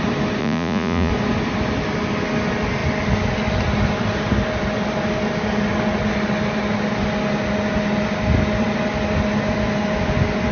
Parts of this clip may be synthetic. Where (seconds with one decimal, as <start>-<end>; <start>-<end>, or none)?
0.4-1.1